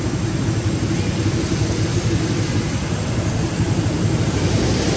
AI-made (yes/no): no